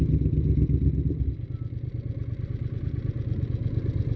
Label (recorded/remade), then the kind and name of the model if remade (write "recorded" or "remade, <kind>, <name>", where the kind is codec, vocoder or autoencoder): recorded